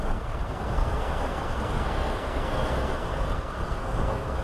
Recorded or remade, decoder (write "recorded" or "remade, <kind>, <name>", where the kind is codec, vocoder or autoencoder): remade, codec, SNAC